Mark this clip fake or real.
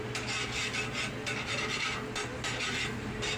real